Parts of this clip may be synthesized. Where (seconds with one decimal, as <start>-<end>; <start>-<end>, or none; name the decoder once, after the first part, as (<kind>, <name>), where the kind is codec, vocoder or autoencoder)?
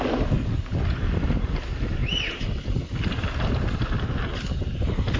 none